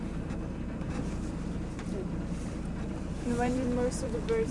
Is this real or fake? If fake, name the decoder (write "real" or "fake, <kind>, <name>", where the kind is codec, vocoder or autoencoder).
fake, vocoder, BigVGAN v2